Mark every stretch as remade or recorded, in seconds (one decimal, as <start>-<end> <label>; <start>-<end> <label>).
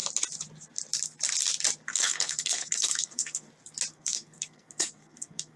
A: 0.0-1.9 recorded; 1.9-3.5 remade; 3.5-3.9 recorded; 3.9-5.6 remade